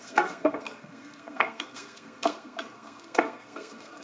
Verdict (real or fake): fake